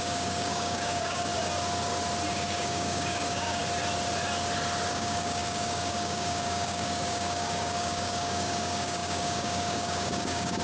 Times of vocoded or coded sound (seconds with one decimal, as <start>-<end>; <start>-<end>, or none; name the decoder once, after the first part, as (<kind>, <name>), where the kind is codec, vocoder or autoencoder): 0.0-1.3 (codec, DAC); 2.3-3.6; 4.9-10.6